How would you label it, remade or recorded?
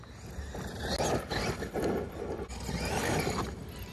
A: recorded